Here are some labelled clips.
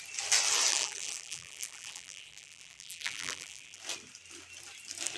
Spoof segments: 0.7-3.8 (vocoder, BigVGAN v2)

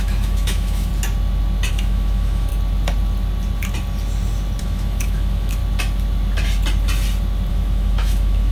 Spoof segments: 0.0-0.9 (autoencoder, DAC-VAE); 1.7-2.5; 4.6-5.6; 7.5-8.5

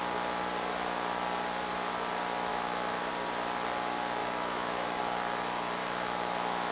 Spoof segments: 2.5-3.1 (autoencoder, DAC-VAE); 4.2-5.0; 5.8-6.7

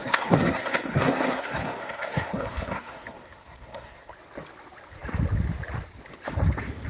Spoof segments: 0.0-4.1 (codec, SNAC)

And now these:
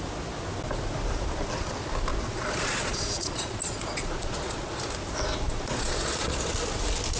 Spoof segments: 2.1-4.8 (vocoder, Vocos); 5.3-6.5